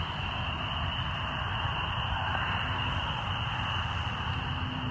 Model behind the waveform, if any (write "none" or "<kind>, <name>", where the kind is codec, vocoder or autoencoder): none